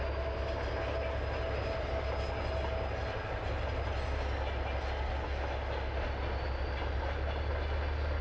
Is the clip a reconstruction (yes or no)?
no